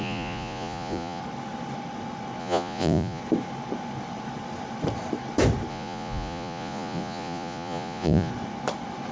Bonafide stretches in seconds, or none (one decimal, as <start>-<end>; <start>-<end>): 1.2-2.4; 3.2-5.7; 8.3-9.1